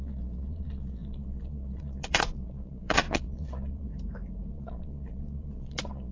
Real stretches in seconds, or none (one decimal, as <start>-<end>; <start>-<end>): 3.9-4.5